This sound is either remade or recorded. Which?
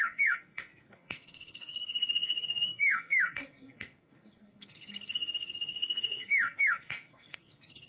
remade